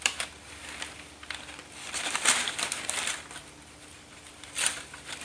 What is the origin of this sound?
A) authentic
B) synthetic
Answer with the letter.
B